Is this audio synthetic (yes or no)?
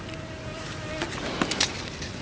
no